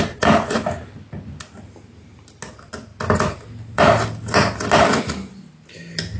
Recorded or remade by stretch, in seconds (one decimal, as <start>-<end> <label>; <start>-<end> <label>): 0.0-6.2 recorded